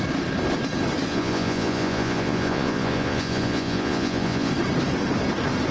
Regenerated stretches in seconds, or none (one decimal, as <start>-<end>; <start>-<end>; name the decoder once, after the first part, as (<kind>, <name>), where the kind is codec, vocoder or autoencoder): 1.1-4.5 (vocoder, Vocos)